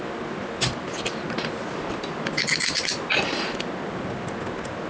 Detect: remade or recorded recorded